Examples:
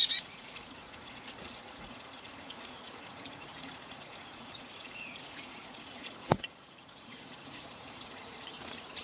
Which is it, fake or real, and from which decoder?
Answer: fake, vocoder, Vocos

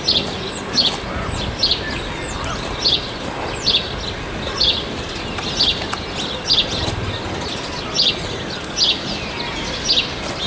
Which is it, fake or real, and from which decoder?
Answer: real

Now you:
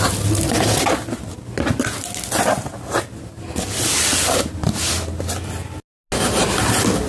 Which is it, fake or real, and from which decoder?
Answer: real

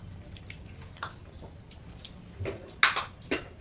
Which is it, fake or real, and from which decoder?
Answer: real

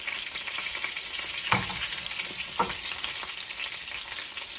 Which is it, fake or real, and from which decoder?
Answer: real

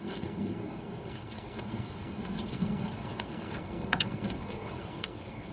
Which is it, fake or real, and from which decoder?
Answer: fake, codec, SNAC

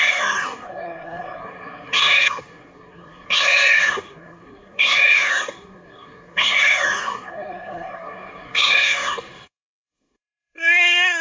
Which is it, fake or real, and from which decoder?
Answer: fake, codec, SNAC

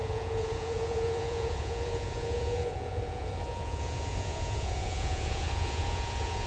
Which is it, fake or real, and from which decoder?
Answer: fake, vocoder, Vocos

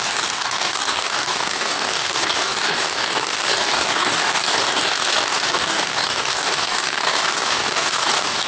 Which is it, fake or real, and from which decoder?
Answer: fake, codec, DAC